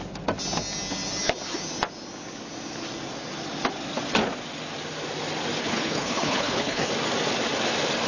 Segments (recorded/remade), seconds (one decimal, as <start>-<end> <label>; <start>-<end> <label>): 0.0-5.6 recorded; 5.6-6.9 remade; 6.9-8.1 recorded